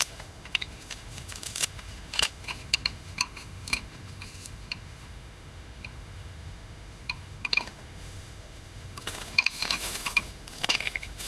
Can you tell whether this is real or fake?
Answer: fake